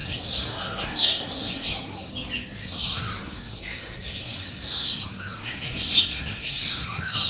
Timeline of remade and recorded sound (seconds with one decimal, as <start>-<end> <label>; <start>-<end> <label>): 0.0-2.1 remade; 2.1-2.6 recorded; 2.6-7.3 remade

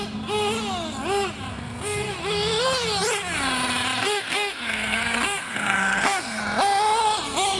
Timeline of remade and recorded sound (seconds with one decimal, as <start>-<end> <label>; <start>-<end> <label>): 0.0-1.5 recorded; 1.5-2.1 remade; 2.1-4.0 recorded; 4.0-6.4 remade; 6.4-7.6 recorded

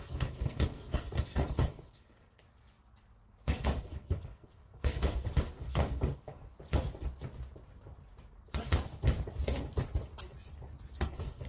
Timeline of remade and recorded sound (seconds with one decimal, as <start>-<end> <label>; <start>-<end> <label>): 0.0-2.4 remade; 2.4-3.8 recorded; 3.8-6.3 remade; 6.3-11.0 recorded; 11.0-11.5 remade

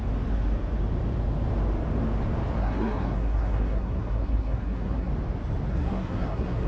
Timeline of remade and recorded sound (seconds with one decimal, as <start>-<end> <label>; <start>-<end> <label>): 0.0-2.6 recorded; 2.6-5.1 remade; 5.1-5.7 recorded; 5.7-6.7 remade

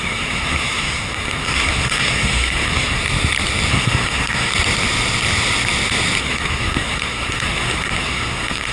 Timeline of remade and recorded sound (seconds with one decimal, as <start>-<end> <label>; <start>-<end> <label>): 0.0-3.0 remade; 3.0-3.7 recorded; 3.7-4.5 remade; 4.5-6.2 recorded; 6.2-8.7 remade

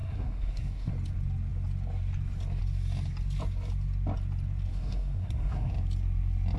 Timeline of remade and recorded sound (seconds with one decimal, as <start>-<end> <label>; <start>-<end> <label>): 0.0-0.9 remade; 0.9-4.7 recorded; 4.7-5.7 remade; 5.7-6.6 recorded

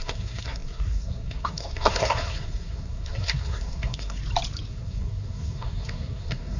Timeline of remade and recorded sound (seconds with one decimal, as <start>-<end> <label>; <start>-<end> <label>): 0.0-4.2 remade; 4.2-4.7 recorded; 4.7-6.6 remade

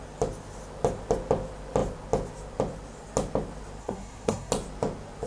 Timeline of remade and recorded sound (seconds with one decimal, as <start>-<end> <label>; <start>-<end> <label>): 0.0-3.8 recorded; 3.8-4.5 remade; 4.5-5.3 recorded